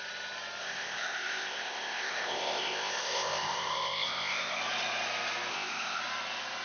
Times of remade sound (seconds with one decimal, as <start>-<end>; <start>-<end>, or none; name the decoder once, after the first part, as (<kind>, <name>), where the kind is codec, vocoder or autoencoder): 0.6-4.6 (codec, ZipCodec); 5.5-6.0